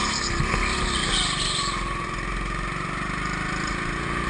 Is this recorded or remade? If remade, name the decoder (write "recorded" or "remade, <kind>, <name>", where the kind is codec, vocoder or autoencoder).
recorded